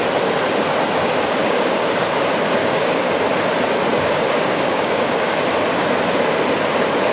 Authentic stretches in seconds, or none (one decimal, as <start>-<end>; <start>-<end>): 0.0-1.4; 2.1-2.6; 3.1-3.9; 5.4-7.1